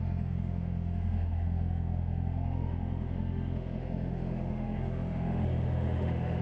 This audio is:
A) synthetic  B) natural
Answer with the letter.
A